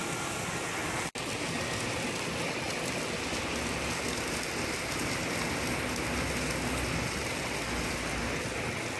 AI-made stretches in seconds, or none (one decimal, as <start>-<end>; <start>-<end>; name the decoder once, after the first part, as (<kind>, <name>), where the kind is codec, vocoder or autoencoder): none